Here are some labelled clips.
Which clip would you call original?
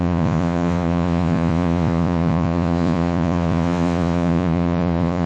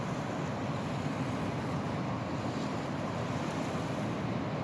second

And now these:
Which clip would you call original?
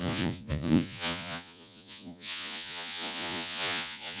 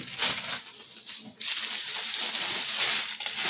second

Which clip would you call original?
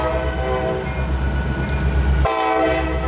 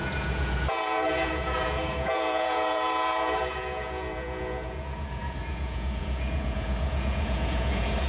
first